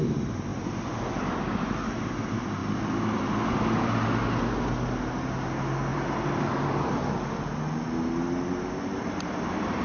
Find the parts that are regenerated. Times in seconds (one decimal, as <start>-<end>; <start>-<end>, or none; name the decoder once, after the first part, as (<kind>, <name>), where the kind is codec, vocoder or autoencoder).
2.6-4.4 (vocoder, BigVGAN v2); 5.9-6.9